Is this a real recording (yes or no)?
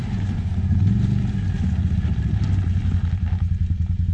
yes